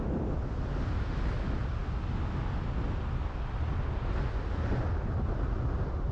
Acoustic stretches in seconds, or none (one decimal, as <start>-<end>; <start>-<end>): 0.0-6.1